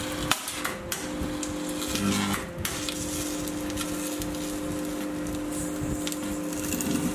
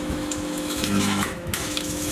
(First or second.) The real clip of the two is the first